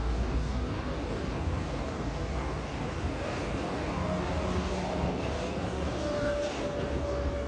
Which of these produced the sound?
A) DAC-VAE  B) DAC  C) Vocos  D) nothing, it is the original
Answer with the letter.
B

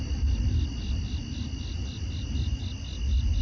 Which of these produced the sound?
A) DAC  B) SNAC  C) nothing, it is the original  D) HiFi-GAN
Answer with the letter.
C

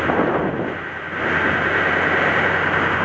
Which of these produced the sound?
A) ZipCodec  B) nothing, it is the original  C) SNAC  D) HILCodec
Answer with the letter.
B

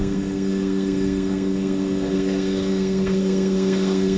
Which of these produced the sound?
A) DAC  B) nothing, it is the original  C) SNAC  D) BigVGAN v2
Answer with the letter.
C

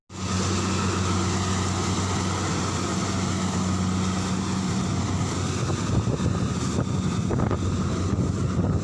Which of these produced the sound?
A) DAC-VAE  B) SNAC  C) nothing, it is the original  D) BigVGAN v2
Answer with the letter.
C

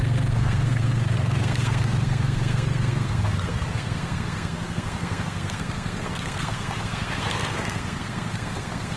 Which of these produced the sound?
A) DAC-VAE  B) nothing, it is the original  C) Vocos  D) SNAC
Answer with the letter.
D